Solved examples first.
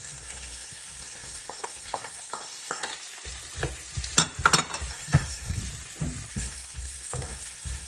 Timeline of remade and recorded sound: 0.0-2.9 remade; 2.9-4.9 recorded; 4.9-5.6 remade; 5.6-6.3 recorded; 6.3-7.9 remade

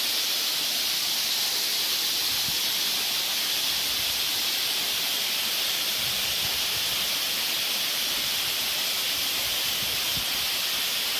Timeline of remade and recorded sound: 0.0-11.2 recorded

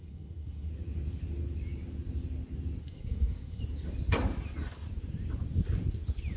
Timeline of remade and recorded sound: 0.0-0.7 remade; 0.7-2.8 recorded; 2.8-3.6 remade; 3.6-6.4 recorded

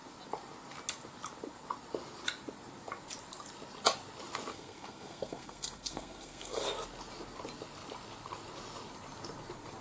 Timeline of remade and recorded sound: 0.0-4.5 recorded; 4.5-6.6 remade; 6.6-9.8 recorded

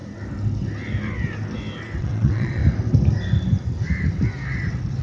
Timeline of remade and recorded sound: 0.0-2.0 recorded; 2.0-2.6 remade; 2.6-5.0 recorded

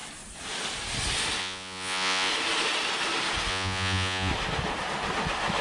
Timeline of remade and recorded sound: 0.0-1.4 recorded; 1.4-2.3 remade; 2.3-3.5 recorded; 3.5-4.3 remade; 4.3-5.6 recorded